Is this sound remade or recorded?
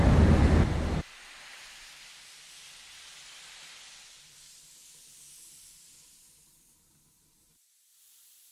remade